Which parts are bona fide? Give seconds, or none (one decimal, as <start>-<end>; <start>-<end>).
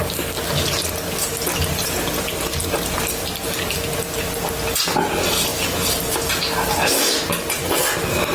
0.0-8.3